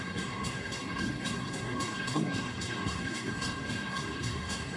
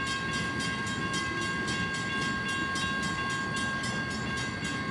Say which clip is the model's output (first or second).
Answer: first